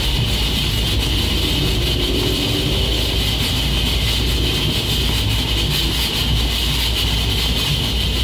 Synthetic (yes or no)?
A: no